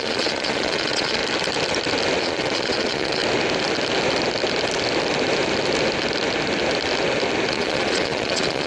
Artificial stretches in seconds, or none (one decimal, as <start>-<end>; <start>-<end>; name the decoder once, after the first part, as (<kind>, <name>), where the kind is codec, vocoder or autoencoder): 0.0-1.2 (vocoder, Vocos); 2.2-3.2; 7.5-8.7